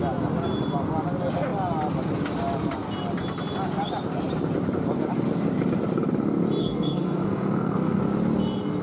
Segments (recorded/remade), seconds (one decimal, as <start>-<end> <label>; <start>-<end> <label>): 0.0-6.6 recorded; 6.6-8.0 remade; 8.0-8.8 recorded

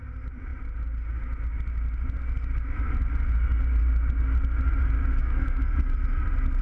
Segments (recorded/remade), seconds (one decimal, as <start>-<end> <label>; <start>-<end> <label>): 0.0-5.2 recorded; 5.2-5.7 remade; 5.7-6.6 recorded